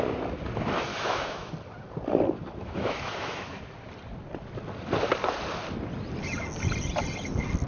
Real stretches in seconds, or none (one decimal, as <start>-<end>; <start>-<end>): 0.0-0.9; 1.5-2.6; 3.6-7.7